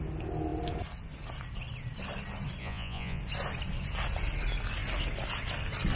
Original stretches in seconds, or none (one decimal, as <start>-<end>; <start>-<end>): 0.0-2.6; 3.2-6.0